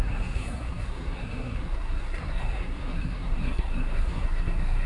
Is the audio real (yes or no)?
no